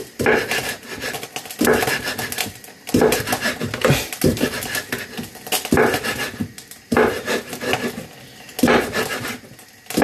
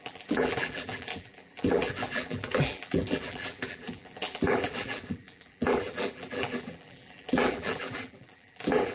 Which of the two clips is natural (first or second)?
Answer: first